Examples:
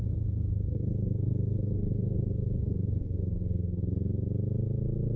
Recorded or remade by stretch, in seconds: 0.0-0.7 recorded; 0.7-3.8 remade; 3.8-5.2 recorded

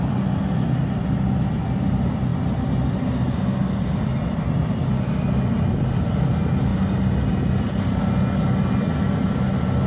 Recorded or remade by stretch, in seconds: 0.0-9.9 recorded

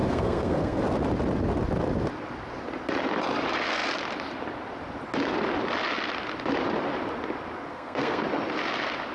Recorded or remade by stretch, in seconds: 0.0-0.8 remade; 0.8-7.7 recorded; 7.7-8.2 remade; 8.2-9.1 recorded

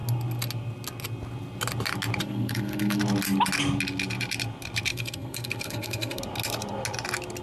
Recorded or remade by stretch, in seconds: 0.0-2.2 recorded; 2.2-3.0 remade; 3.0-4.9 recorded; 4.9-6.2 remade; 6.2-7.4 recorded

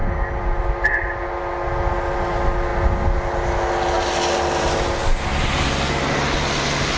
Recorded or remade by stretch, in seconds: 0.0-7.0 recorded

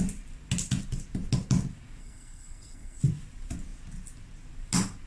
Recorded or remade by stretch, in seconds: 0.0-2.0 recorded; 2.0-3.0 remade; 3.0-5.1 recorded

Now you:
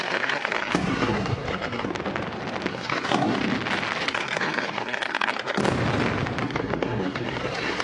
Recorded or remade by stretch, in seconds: 0.0-1.9 remade; 1.9-2.7 recorded; 2.7-3.4 remade; 3.4-4.0 recorded; 4.0-5.6 remade; 5.6-6.4 recorded; 6.4-7.8 remade